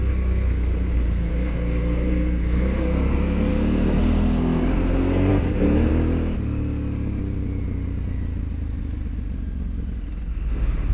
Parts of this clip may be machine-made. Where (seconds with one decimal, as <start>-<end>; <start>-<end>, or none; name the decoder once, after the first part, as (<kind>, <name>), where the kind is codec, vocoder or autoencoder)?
0.0-5.9 (codec, SNAC); 10.3-10.9